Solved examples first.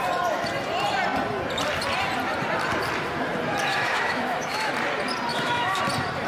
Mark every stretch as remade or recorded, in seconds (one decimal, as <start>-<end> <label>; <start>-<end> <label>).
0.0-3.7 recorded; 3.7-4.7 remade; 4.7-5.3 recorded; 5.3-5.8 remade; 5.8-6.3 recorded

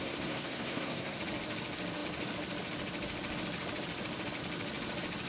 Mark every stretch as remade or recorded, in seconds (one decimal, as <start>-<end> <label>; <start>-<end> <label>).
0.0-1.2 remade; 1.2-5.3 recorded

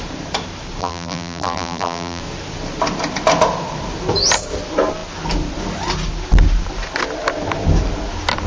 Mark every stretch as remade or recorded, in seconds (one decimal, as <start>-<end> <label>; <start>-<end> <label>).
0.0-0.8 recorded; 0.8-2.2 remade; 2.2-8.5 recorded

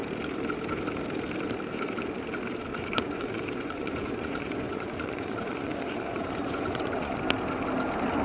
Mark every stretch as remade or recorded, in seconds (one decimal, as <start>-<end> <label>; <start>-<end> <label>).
0.0-2.7 recorded; 2.7-7.2 remade; 7.2-8.2 recorded

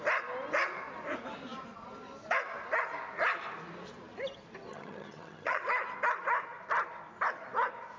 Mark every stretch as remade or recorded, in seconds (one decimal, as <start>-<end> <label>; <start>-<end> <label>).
0.0-4.7 recorded; 4.7-5.6 remade; 5.6-8.0 recorded

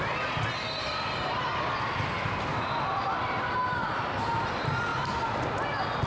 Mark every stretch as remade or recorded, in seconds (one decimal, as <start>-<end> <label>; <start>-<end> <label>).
0.0-1.5 remade; 1.5-4.2 recorded; 4.2-4.9 remade; 4.9-6.1 recorded